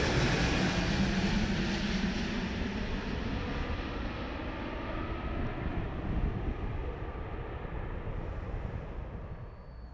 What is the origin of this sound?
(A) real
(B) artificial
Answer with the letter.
A